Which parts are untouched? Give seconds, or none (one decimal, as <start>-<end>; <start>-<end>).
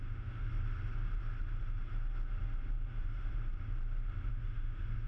0.4-2.9; 3.3-4.3